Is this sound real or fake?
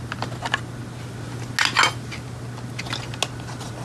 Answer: real